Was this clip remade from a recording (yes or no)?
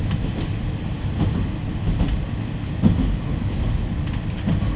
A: no